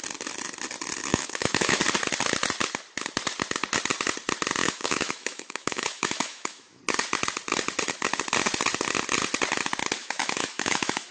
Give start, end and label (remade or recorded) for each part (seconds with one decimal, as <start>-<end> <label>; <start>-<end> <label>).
0.0-1.1 recorded; 1.1-1.8 remade; 1.8-4.6 recorded; 4.6-6.8 remade; 6.8-10.0 recorded; 10.0-11.1 remade

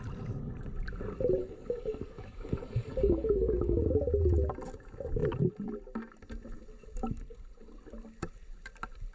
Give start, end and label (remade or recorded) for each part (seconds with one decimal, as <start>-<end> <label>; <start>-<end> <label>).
0.0-1.4 recorded; 1.4-3.8 remade; 3.8-9.1 recorded

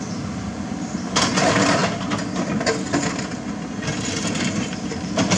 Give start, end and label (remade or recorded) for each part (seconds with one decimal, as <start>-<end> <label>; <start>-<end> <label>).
0.0-1.8 remade; 1.8-4.5 recorded; 4.5-5.4 remade

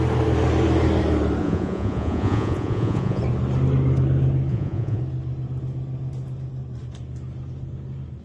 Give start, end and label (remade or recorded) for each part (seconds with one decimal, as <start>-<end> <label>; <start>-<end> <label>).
0.0-1.4 recorded; 1.4-3.2 remade; 3.2-4.5 recorded; 4.5-5.0 remade; 5.0-8.2 recorded

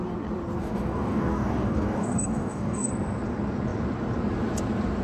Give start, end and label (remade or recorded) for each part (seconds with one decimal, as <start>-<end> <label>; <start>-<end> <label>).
0.0-0.6 recorded; 0.6-2.9 remade; 2.9-5.0 recorded

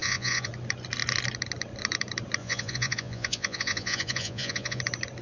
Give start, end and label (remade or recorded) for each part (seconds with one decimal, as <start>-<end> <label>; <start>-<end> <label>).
0.0-0.5 remade; 0.5-2.4 recorded; 2.4-4.8 remade; 4.8-5.2 recorded